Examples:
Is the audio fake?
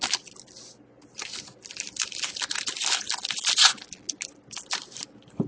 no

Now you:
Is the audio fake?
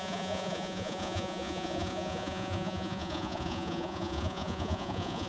yes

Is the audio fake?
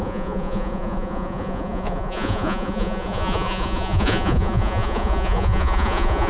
yes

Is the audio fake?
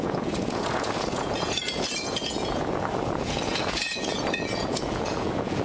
yes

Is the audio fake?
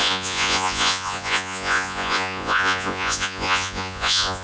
yes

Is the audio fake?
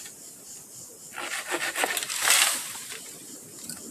no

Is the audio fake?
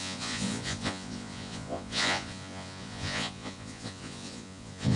yes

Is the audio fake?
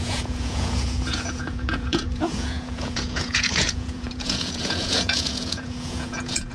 yes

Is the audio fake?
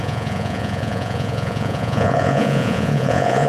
yes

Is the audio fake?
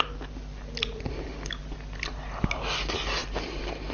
no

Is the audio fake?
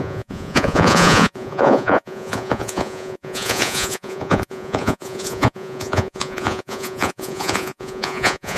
yes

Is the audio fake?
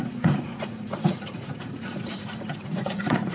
yes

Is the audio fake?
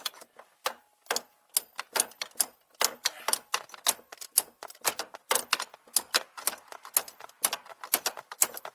no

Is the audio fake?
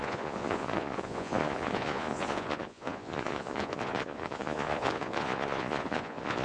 yes